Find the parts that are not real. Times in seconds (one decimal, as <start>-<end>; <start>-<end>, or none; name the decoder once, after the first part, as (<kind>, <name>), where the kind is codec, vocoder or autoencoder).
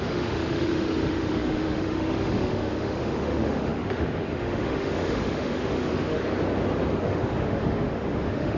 0.0-6.2 (autoencoder, DAC-VAE); 7.0-8.6